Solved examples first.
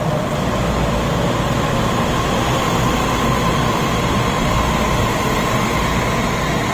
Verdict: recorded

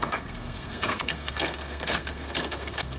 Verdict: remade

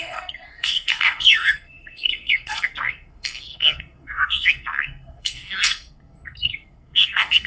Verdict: remade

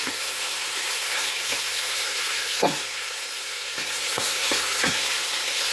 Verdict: remade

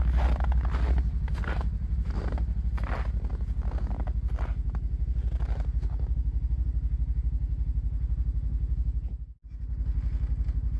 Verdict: recorded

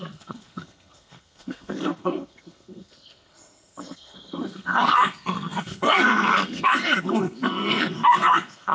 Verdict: remade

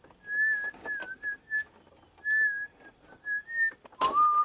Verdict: recorded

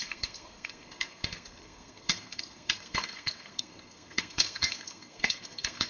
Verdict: remade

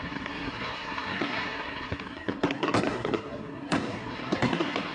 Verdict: remade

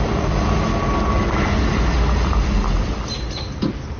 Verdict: recorded